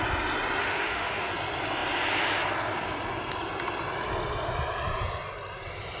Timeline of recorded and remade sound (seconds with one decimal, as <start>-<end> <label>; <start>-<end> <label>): 0.0-0.6 recorded; 0.6-1.3 remade; 1.3-6.0 recorded